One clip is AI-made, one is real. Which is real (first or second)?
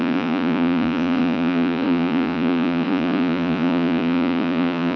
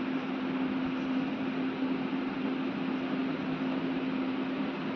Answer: second